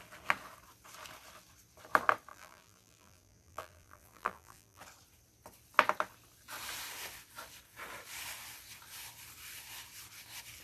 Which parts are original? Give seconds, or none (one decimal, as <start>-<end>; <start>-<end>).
0.0-2.3; 4.8-10.6